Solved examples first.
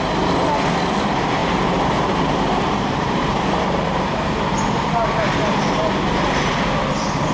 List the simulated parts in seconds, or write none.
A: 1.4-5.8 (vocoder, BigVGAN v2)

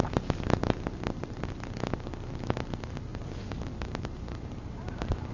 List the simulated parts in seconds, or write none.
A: 3.1-5.3 (vocoder, BigVGAN v2)

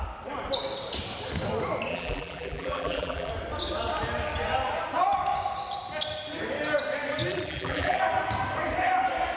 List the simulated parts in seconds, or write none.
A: 1.9-3.3 (vocoder, BigVGAN v2); 7.3-8.0

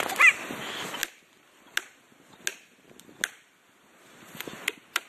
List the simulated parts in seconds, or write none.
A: none

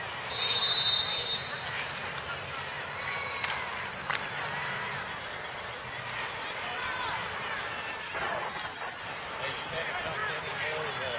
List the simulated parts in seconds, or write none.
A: 2.7-4.7 (vocoder, BigVGAN v2)

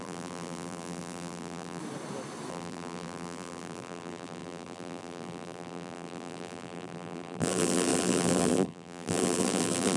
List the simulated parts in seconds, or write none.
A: 0.0-1.8 (vocoder, BigVGAN v2); 2.5-10.0

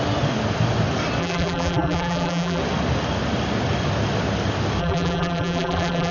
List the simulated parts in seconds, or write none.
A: 1.2-2.6 (vocoder, BigVGAN v2); 4.8-6.1